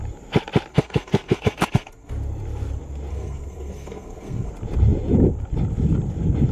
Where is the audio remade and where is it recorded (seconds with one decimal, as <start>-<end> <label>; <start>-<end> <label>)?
0.0-0.7 recorded; 0.7-2.1 remade; 2.1-3.1 recorded; 3.1-4.5 remade; 4.5-6.5 recorded